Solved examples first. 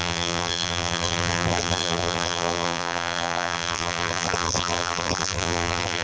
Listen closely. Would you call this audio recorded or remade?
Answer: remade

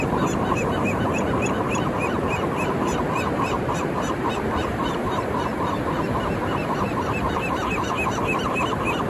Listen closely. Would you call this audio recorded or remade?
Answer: remade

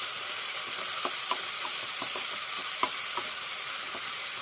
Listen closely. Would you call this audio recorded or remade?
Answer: remade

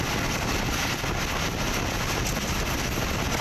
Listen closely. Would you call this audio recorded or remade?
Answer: recorded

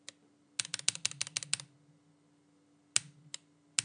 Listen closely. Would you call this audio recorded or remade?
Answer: recorded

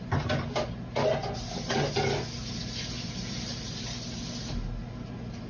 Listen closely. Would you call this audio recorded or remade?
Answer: recorded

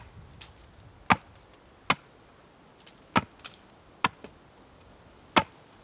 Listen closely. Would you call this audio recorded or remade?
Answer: recorded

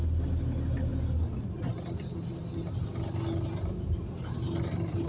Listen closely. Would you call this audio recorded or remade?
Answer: recorded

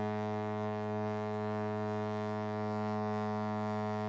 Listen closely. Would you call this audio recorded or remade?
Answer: recorded